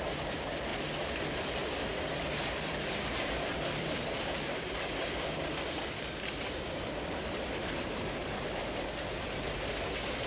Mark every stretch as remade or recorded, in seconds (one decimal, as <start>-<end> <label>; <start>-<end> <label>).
0.0-0.7 remade; 0.7-2.5 recorded; 2.5-8.2 remade; 8.2-10.3 recorded